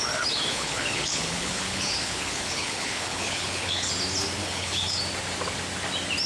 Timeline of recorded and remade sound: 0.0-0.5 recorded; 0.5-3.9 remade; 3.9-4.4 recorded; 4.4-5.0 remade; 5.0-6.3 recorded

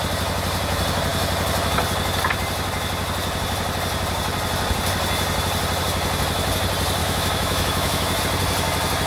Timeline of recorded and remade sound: 0.0-7.0 recorded; 7.0-8.2 remade; 8.2-9.1 recorded

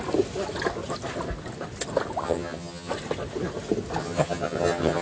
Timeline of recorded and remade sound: 0.0-2.2 recorded; 2.2-2.9 remade; 2.9-4.0 recorded; 4.0-5.0 remade

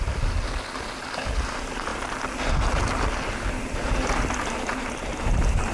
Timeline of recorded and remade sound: 0.0-5.7 recorded

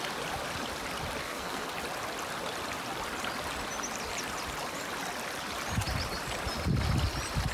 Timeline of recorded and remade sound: 0.0-1.2 recorded; 1.2-1.7 remade; 1.7-7.5 recorded

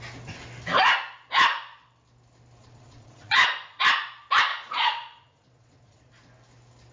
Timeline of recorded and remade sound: 0.0-2.6 recorded; 2.6-3.8 remade; 3.8-4.5 recorded; 4.5-6.1 remade; 6.1-6.9 recorded

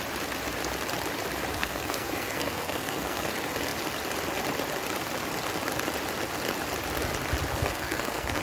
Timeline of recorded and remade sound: 0.0-1.5 recorded; 1.5-3.3 remade; 3.3-7.5 recorded; 7.5-8.4 remade